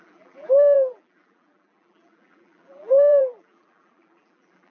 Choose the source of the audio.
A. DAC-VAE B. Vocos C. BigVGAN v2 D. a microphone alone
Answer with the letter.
C